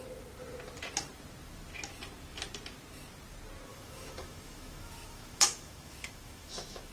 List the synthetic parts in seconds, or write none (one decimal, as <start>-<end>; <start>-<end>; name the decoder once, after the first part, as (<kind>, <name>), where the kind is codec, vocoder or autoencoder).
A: 3.7-6.9 (autoencoder, DAC-VAE)